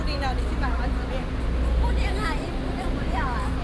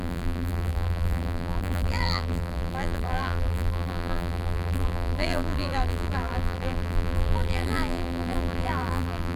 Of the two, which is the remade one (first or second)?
second